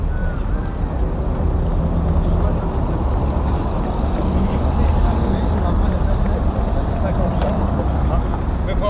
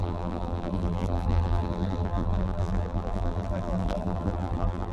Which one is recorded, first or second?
first